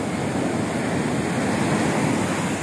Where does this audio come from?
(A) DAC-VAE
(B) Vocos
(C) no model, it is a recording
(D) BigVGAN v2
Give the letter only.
C